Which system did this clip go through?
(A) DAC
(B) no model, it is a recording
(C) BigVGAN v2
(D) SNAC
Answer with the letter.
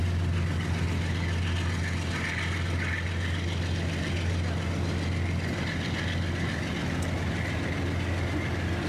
B